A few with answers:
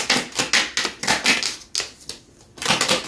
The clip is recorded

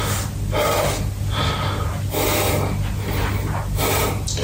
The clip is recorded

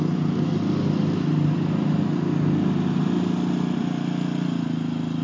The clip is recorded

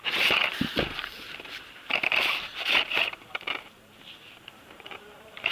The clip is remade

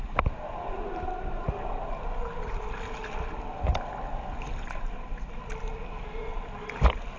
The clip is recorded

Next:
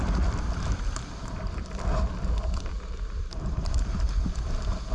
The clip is recorded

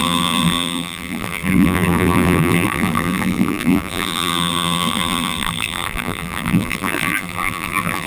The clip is remade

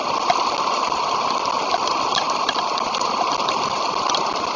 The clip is recorded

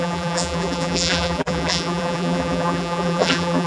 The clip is remade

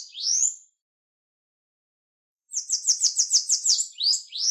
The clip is remade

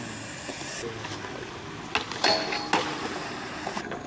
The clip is recorded